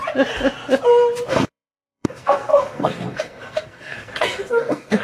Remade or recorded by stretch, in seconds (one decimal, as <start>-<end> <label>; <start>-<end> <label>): 0.0-1.3 recorded; 1.3-5.0 remade